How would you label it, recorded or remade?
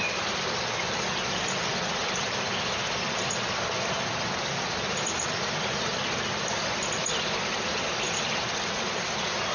recorded